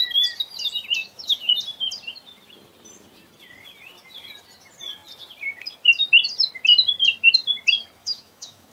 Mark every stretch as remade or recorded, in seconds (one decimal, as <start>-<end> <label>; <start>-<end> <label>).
0.0-1.0 recorded; 1.0-1.5 remade; 1.5-8.0 recorded; 8.0-8.7 remade